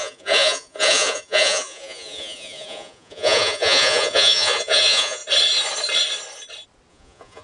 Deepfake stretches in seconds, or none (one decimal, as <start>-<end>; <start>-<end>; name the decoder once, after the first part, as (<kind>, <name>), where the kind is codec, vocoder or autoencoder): 0.0-5.2 (vocoder, Vocos); 6.9-7.4